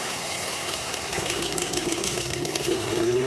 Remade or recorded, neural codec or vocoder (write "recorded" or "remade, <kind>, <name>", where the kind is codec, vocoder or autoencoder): remade, codec, SNAC